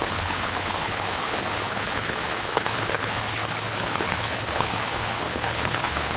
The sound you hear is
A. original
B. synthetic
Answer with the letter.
B